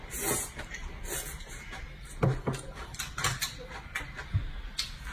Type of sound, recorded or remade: recorded